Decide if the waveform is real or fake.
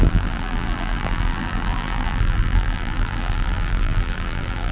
fake